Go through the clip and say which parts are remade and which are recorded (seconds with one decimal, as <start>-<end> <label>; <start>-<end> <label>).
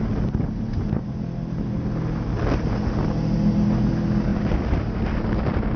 0.0-4.3 recorded; 4.3-4.8 remade; 4.8-5.8 recorded